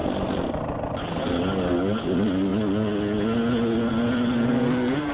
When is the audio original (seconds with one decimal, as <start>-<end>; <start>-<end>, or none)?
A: 0.0-5.1